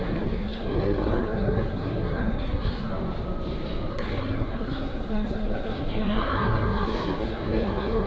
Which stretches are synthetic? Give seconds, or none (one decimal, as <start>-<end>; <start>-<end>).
0.0-2.9; 3.9-8.1